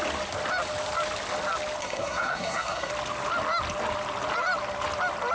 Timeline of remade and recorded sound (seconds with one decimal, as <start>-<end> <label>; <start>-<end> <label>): 0.0-1.8 recorded; 1.8-2.9 remade; 2.9-5.3 recorded